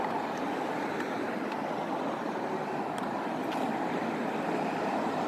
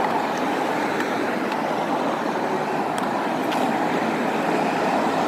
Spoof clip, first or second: first